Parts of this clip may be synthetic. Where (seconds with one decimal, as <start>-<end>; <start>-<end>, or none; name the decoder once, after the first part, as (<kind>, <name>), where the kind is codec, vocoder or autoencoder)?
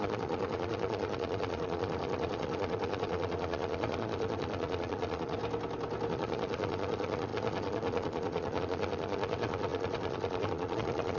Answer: 0.0-5.4 (vocoder, Vocos); 6.1-11.2